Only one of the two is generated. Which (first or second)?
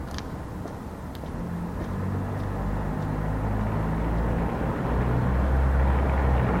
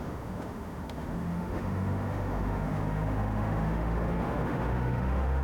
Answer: second